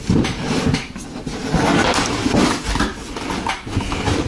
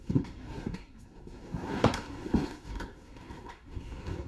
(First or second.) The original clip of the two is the first